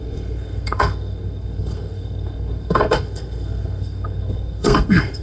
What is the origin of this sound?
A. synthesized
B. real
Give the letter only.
A